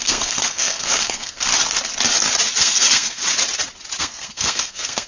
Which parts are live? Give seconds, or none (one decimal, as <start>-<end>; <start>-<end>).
1.5-2.6; 3.2-4.0